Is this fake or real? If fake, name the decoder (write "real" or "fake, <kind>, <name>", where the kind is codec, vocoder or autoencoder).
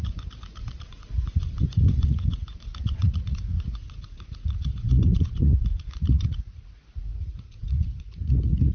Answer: fake, vocoder, Vocos